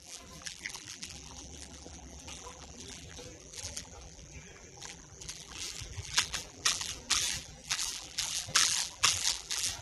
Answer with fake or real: fake